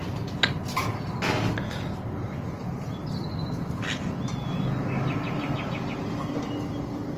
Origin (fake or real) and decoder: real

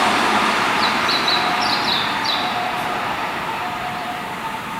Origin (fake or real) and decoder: fake, vocoder, BigVGAN v2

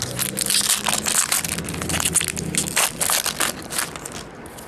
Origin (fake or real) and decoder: real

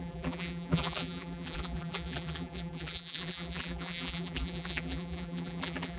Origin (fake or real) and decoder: fake, vocoder, BigVGAN v2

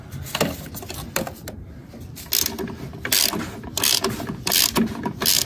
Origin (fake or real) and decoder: real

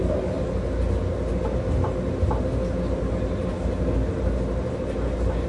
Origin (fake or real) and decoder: real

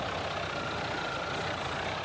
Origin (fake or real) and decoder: real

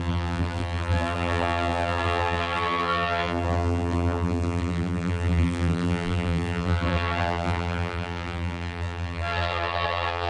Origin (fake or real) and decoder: fake, vocoder, BigVGAN v2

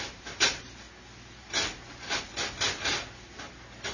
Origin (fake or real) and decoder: real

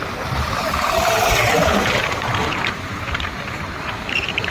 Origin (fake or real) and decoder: fake, vocoder, BigVGAN v2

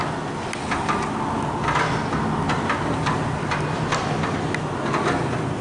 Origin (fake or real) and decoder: real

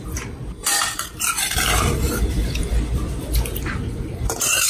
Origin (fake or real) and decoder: fake, vocoder, BigVGAN v2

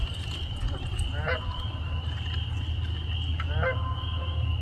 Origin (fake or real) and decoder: real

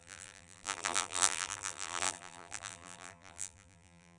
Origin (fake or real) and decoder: fake, vocoder, BigVGAN v2